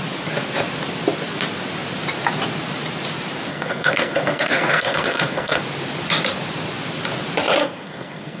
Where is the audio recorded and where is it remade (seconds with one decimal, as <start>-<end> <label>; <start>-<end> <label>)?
0.0-3.5 recorded; 3.5-5.6 remade; 5.6-7.6 recorded; 7.6-8.4 remade